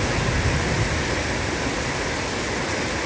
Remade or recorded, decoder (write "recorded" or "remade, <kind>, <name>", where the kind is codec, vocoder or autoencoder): recorded